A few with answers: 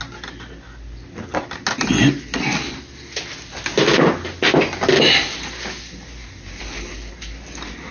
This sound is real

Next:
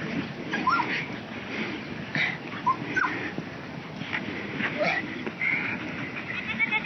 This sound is real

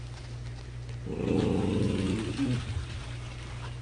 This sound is real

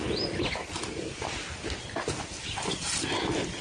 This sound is real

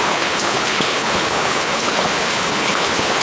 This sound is fake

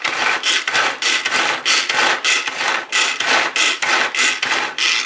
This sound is real